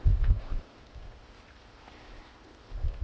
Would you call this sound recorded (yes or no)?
no